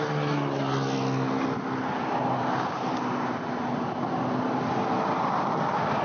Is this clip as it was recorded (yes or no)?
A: yes